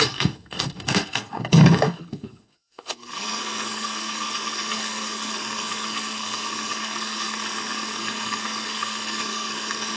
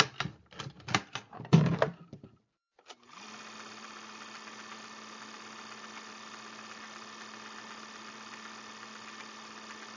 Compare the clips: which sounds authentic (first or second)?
second